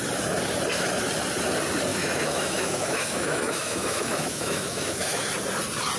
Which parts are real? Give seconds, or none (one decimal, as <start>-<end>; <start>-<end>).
0.0-1.9; 5.3-6.0